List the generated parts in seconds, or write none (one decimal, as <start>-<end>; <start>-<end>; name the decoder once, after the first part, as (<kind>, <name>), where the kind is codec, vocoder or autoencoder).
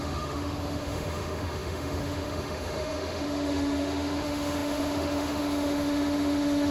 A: 0.0-6.7 (autoencoder, DAC-VAE)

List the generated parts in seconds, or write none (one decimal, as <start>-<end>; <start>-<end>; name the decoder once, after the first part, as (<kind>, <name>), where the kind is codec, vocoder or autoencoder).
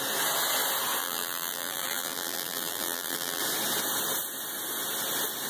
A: 1.0-3.4 (vocoder, BigVGAN v2)